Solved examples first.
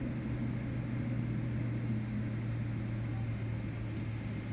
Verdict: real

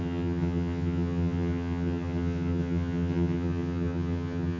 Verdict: fake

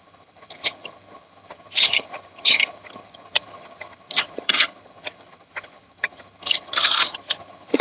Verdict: fake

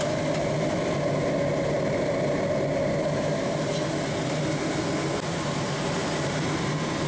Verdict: real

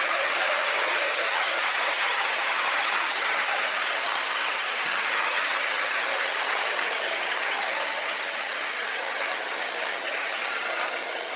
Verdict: fake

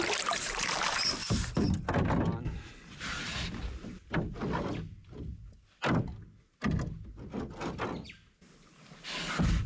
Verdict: real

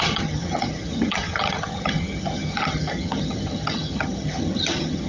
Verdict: fake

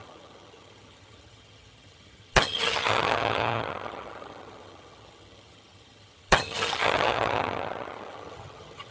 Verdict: fake